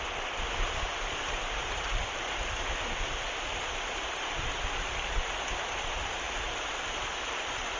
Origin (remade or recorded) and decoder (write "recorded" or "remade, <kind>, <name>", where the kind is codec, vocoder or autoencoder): recorded